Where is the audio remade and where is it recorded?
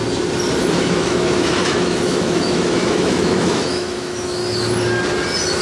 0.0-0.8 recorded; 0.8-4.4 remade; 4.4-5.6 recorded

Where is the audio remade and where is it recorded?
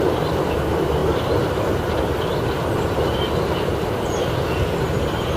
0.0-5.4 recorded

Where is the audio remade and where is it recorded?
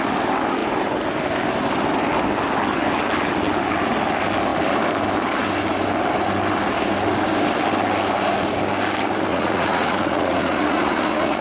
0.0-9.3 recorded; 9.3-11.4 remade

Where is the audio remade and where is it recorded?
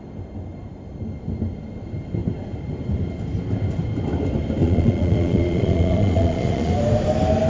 0.0-4.6 recorded; 4.6-6.7 remade; 6.7-7.5 recorded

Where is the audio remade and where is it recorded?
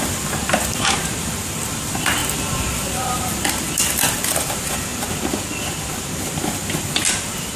0.0-4.9 remade; 4.9-6.2 recorded; 6.2-7.6 remade